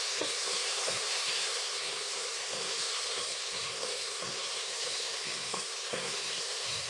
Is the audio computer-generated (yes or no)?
yes